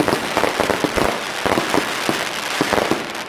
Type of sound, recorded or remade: recorded